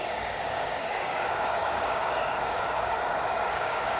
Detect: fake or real fake